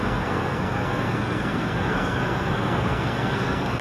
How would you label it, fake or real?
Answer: fake